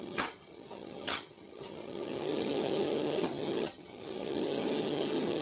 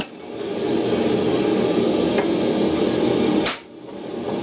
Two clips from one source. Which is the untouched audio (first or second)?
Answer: second